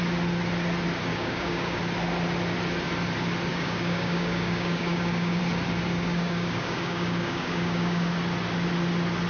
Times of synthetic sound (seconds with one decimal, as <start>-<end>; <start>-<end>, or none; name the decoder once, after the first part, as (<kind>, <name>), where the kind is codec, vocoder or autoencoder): 1.1-1.8 (codec, DAC); 3.5-5.4; 5.9-8.1